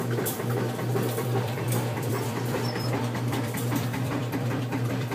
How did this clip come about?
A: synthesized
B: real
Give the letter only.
A